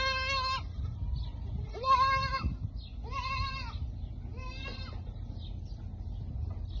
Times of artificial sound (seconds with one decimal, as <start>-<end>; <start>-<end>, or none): none